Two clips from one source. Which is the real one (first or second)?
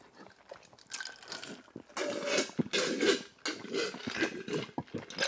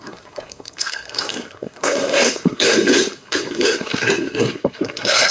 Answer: first